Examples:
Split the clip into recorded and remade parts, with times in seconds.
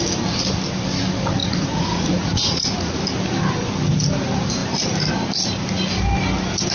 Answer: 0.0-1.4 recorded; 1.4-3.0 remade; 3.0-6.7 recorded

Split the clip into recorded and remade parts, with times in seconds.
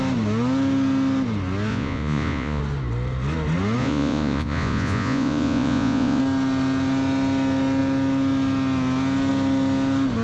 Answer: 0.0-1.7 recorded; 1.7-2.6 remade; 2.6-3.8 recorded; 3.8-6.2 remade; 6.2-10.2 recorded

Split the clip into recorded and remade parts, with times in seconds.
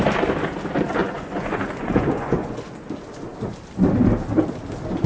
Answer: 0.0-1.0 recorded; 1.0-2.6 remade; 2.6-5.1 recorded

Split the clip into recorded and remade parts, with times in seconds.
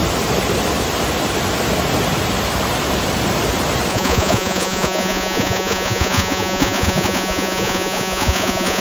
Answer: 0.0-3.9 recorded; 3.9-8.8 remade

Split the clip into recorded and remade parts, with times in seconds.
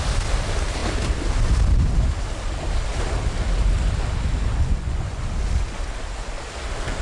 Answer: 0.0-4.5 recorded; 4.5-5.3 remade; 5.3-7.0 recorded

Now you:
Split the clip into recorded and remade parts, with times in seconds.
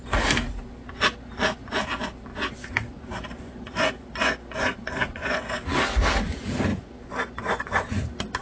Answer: 0.0-2.3 recorded; 2.3-5.6 remade; 5.6-6.7 recorded; 6.7-8.0 remade; 8.0-8.4 recorded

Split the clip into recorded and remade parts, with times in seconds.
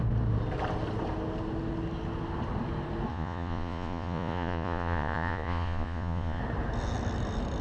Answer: 0.0-3.1 recorded; 3.1-6.4 remade; 6.4-7.6 recorded